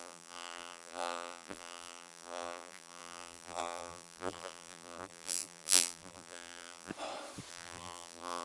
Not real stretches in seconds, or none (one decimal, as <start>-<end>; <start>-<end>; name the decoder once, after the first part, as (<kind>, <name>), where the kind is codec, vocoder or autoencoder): 0.0-6.9 (vocoder, BigVGAN v2); 7.5-8.4